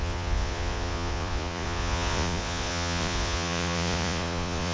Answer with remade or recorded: remade